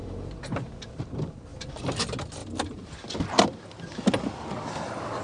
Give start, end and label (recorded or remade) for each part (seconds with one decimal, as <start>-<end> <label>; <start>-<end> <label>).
0.0-2.4 remade; 2.4-5.2 recorded